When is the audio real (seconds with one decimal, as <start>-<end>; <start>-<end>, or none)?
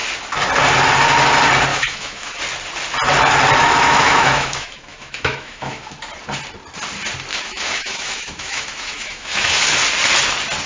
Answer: 0.0-1.7; 2.4-3.6; 5.9-7.3; 9.6-10.7